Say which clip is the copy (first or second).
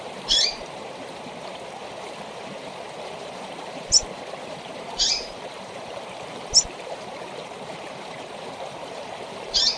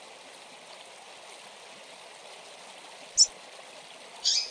first